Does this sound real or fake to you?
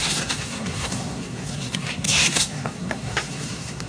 fake